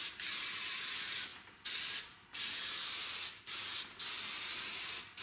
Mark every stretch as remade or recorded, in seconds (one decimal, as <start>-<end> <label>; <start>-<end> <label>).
0.0-1.3 remade; 1.3-2.7 recorded; 2.7-3.7 remade; 3.7-4.7 recorded; 4.7-5.2 remade